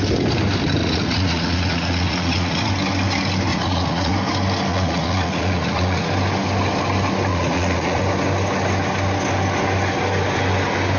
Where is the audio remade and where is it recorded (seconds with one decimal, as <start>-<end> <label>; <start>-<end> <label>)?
0.0-0.8 recorded; 0.8-2.7 remade; 2.7-3.5 recorded; 3.5-4.1 remade; 4.1-4.7 recorded; 4.7-6.1 remade; 6.1-7.3 recorded; 7.3-8.0 remade; 8.0-11.0 recorded